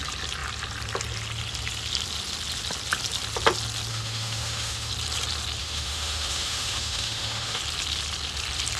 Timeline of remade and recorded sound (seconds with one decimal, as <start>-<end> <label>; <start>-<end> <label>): 0.0-3.9 recorded; 3.9-4.9 remade; 4.9-5.6 recorded; 5.6-7.6 remade; 7.6-8.8 recorded